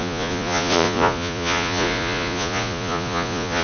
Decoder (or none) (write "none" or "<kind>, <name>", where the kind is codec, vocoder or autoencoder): vocoder, Vocos